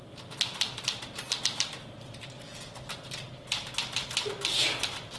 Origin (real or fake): real